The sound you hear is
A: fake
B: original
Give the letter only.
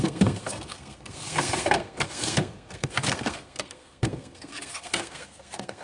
A